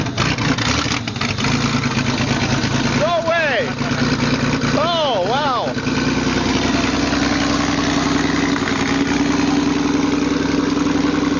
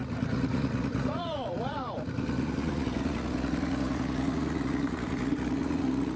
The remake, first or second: second